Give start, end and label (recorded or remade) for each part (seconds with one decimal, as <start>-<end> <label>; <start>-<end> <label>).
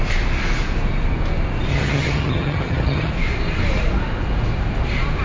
0.0-1.7 recorded; 1.7-3.1 remade; 3.1-5.2 recorded